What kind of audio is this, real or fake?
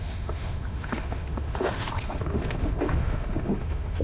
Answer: fake